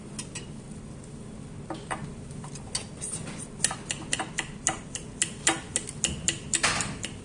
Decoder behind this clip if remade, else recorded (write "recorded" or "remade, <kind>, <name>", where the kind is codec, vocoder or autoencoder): recorded